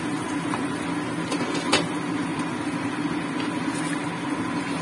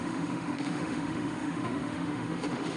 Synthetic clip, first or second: second